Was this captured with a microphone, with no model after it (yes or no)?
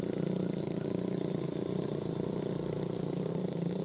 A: yes